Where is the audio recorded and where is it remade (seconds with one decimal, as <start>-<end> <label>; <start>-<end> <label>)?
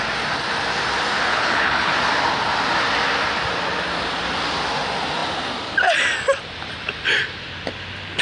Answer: 0.0-1.3 recorded; 1.3-1.9 remade; 1.9-8.2 recorded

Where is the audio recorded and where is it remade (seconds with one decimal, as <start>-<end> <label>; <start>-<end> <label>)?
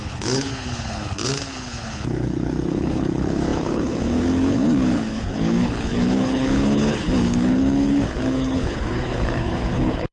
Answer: 0.0-10.1 remade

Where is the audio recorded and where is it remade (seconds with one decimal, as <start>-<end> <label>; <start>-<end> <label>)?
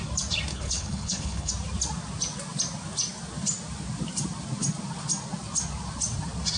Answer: 0.0-0.5 recorded; 0.5-1.5 remade; 1.5-6.6 recorded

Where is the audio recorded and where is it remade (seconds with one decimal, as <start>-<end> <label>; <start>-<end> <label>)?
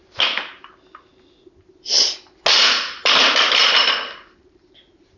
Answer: 0.0-5.2 recorded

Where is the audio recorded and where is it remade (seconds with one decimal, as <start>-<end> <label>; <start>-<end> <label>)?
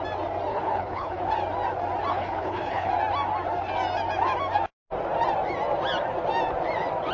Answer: 0.0-0.5 recorded; 0.5-1.2 remade; 1.2-2.1 recorded; 2.1-2.9 remade; 2.9-7.1 recorded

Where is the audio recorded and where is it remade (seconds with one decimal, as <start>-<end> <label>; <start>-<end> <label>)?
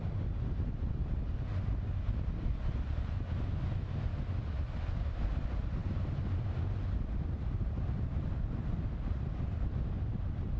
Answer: 0.0-10.6 recorded